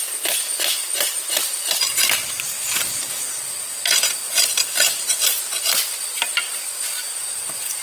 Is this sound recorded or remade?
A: remade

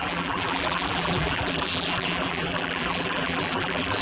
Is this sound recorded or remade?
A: remade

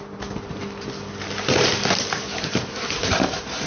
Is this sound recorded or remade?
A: remade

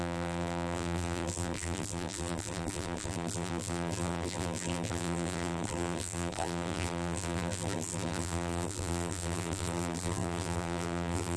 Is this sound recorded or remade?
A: remade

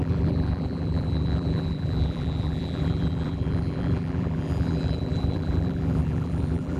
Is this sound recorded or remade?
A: remade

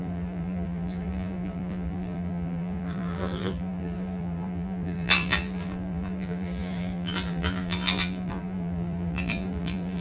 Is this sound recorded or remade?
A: remade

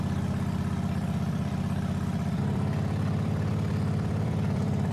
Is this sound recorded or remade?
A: remade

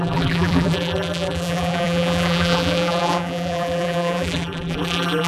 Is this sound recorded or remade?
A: remade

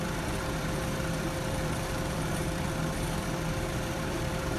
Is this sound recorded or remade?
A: remade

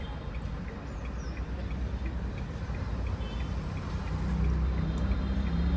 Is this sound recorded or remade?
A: recorded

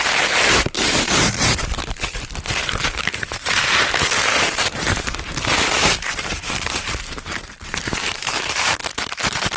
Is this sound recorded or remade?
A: remade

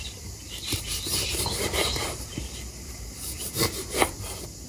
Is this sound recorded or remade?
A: remade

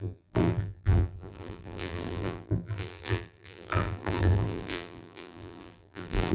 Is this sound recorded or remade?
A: remade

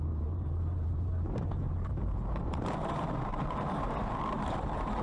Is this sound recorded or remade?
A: remade